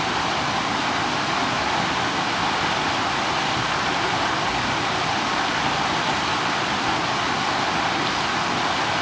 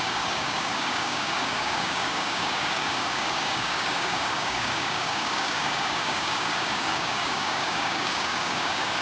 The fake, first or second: second